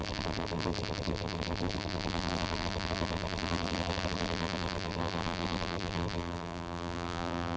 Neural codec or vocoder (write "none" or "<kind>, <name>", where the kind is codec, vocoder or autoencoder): vocoder, BigVGAN v2